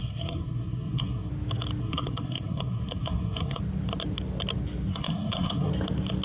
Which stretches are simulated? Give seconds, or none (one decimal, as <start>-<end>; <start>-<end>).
0.0-1.3; 1.8-3.6; 4.9-5.7